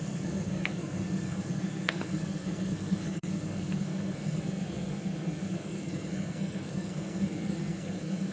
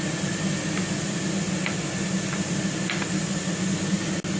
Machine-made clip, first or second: first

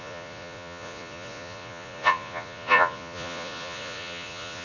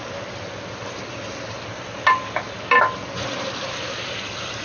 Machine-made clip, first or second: first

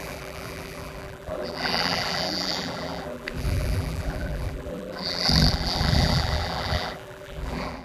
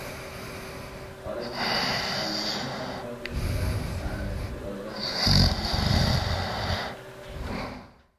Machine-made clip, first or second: first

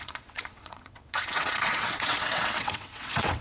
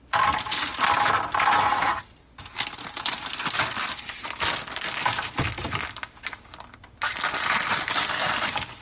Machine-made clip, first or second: first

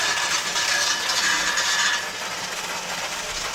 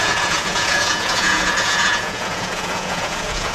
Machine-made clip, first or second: second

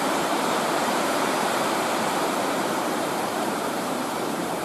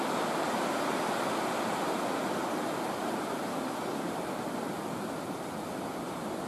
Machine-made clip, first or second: first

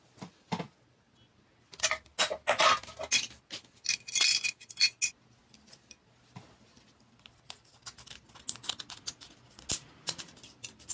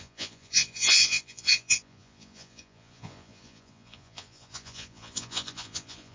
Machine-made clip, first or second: second